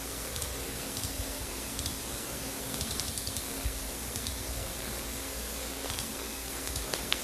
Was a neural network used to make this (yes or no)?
yes